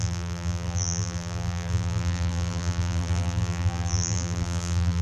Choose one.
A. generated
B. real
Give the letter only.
A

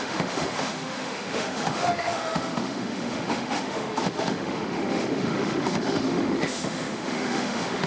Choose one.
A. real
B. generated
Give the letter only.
B